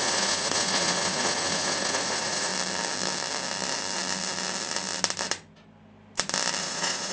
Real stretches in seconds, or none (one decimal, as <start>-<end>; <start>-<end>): 2.5-6.6